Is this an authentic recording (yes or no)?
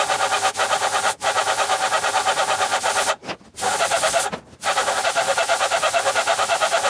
yes